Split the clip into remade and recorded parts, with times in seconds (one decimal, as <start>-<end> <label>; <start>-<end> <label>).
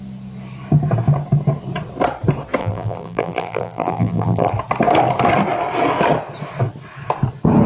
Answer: 0.0-2.6 recorded; 2.6-4.5 remade; 4.5-7.7 recorded